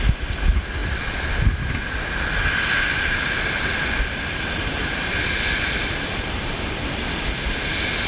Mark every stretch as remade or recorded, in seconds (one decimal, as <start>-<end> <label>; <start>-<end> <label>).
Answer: 0.0-8.1 recorded